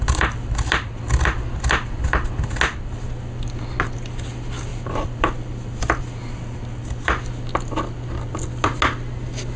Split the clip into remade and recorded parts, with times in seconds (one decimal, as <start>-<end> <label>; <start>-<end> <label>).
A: 0.0-4.7 recorded; 4.7-6.6 remade; 6.6-9.6 recorded